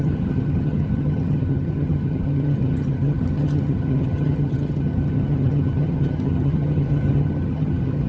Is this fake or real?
fake